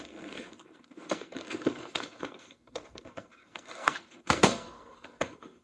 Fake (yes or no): yes